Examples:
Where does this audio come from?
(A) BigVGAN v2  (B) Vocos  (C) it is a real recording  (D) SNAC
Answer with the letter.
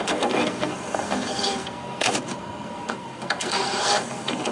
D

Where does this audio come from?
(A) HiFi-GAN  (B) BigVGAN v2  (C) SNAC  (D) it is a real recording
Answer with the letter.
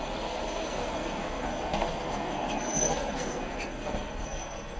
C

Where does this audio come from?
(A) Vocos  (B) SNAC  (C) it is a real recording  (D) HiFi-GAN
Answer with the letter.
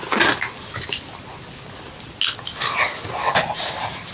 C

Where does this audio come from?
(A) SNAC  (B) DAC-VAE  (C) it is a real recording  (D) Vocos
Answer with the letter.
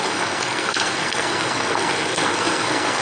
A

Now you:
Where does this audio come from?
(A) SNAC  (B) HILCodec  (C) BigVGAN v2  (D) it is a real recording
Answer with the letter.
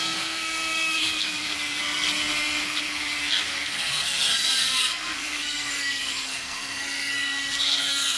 A